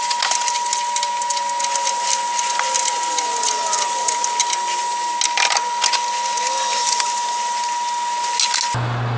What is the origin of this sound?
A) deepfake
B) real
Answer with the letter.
B